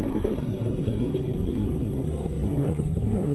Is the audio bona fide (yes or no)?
no